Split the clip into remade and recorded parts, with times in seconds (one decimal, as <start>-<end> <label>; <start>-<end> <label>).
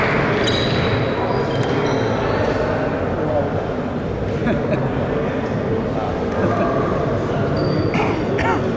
0.0-8.8 recorded